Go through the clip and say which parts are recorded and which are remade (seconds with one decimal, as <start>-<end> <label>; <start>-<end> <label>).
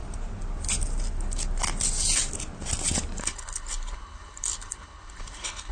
0.0-3.2 recorded; 3.2-5.7 remade